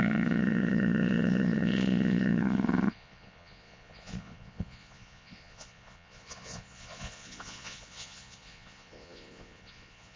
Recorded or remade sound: remade